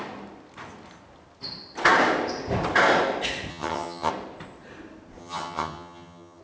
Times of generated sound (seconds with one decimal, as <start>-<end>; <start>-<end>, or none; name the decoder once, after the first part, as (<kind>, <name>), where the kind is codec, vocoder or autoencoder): 3.5-4.1 (vocoder, HiFi-GAN); 5.2-6.4